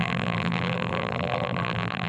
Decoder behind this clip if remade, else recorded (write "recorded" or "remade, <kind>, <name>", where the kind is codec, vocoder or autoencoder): remade, vocoder, BigVGAN v2